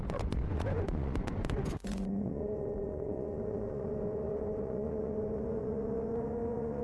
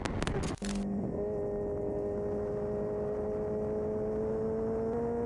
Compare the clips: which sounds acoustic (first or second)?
second